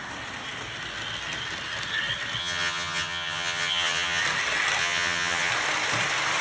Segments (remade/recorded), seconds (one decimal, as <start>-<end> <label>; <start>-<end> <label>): 0.0-2.4 recorded; 2.4-4.2 remade; 4.2-4.8 recorded; 4.8-5.5 remade; 5.5-6.4 recorded